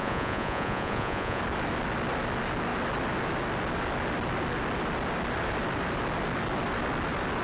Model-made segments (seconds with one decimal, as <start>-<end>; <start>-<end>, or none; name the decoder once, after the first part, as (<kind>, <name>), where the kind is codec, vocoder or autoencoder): 0.0-1.4 (vocoder, Vocos)

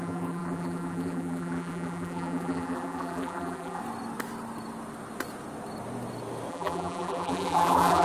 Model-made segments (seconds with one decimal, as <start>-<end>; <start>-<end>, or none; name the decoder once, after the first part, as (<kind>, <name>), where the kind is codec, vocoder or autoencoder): 0.0-3.8 (vocoder, BigVGAN v2); 6.5-8.0

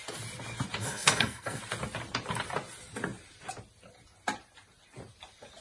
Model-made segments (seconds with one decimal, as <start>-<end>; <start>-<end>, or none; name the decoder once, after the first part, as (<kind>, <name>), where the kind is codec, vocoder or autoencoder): 0.8-1.6 (codec, SNAC)

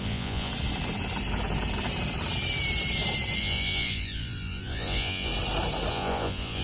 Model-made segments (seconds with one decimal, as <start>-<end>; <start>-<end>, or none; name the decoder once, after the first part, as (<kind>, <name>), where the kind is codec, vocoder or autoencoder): 0.0-0.5 (vocoder, Vocos); 3.4-5.3; 5.9-6.6

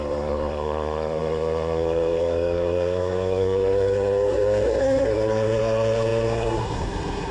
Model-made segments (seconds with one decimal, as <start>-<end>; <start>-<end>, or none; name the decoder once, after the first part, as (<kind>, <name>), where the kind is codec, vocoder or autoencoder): 0.0-7.3 (codec, SNAC)